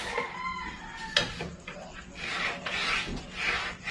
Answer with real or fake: real